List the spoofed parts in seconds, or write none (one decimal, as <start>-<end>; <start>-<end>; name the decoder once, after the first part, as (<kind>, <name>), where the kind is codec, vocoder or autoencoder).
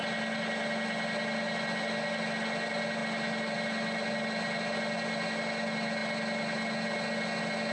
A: none